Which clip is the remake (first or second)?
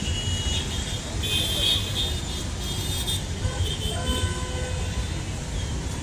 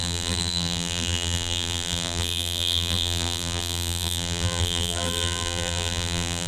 second